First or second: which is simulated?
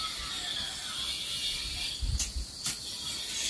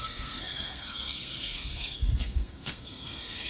second